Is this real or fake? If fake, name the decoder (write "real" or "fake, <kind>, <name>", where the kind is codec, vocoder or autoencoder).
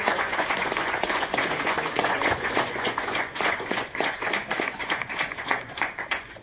fake, vocoder, Vocos